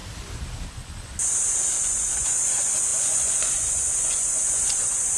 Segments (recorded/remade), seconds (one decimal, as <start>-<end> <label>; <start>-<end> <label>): 0.0-0.7 recorded; 0.7-1.1 remade; 1.1-1.8 recorded; 1.8-5.2 remade

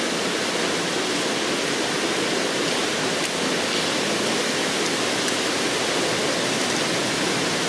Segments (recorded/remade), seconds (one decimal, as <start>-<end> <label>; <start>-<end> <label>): 0.0-7.7 recorded

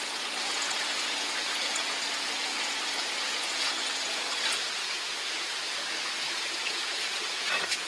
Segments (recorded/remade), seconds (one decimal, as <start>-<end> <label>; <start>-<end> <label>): 0.0-5.6 remade; 5.6-6.3 recorded; 6.3-7.9 remade